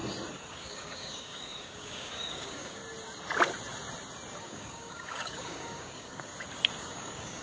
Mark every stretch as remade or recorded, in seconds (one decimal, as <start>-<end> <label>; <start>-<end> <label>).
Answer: 0.0-0.5 recorded; 0.5-2.8 remade; 2.8-4.4 recorded; 4.4-6.3 remade; 6.3-6.8 recorded; 6.8-7.4 remade